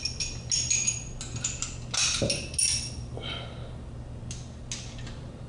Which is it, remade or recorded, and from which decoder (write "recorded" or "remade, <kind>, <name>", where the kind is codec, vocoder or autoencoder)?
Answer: recorded